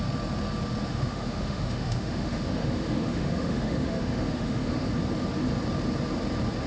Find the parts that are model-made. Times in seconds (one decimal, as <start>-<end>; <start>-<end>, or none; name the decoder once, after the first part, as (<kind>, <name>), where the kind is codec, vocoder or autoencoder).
0.9-4.9 (autoencoder, DAC-VAE)